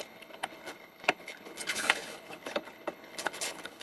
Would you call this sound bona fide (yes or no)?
no